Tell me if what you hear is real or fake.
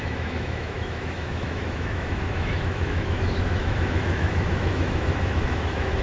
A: fake